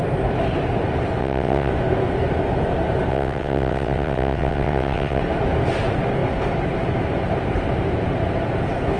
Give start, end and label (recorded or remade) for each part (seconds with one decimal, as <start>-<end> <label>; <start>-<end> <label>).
0.0-1.2 recorded; 1.2-1.7 remade; 1.7-3.1 recorded; 3.1-5.2 remade; 5.2-9.0 recorded